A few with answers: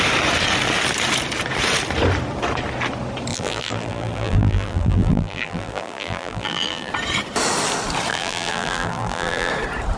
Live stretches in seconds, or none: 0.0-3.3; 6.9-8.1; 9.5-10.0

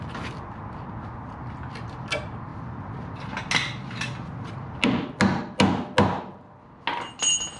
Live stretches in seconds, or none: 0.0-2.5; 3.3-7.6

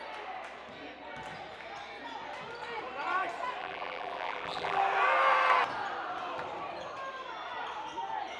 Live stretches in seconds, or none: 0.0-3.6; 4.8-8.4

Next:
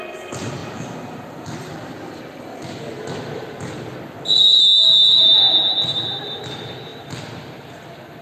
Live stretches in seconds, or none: 0.0-8.2

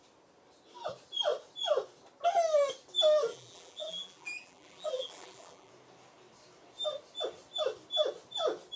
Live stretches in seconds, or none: 0.0-3.3; 5.7-8.8

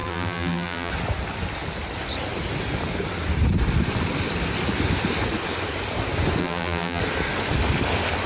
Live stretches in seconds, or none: 0.9-6.4; 7.0-8.3

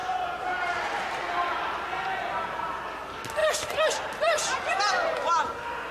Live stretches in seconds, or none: 0.8-3.4; 4.8-5.9

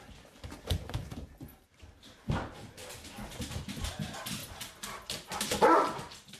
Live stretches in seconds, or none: 2.8-3.5; 4.4-6.4